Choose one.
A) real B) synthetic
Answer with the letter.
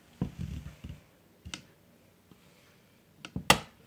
A